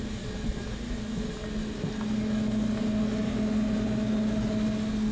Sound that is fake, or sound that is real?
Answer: real